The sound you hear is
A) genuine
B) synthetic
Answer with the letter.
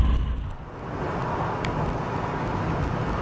A